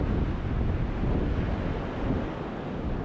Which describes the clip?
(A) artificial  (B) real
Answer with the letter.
B